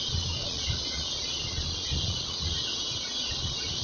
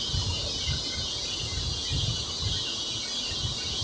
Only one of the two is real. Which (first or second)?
second